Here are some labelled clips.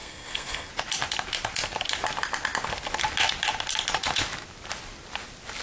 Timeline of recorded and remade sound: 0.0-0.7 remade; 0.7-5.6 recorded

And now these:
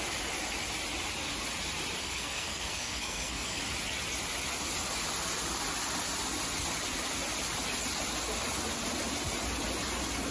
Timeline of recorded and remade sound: 0.0-2.0 recorded; 2.0-3.6 remade; 3.6-10.3 recorded

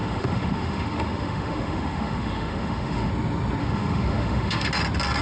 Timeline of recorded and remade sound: 0.0-3.1 remade; 3.1-3.6 recorded; 3.6-4.7 remade; 4.7-5.2 recorded

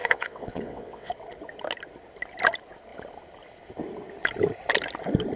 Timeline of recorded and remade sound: 0.0-1.1 remade; 1.1-5.4 recorded

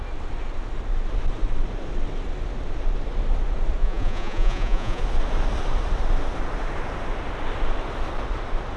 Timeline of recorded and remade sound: 0.0-3.8 recorded; 3.8-5.0 remade; 5.0-8.8 recorded

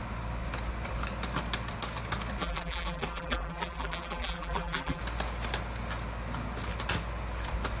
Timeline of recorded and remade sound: 0.0-2.4 recorded; 2.4-5.0 remade; 5.0-7.8 recorded

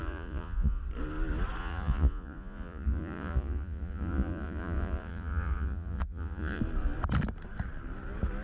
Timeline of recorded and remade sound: 0.0-0.8 remade; 0.8-1.6 recorded; 1.6-6.6 remade; 6.6-8.4 recorded

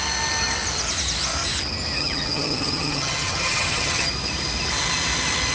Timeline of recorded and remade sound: 0.0-2.0 recorded; 2.0-4.1 remade; 4.1-5.5 recorded